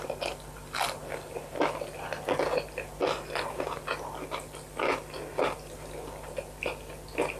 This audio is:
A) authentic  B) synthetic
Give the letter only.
A